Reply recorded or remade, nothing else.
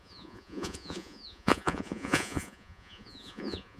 remade